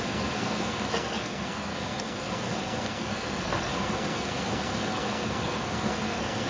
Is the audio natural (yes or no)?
no